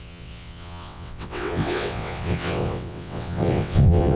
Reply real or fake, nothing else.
fake